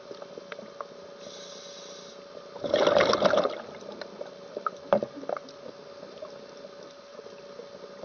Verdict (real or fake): real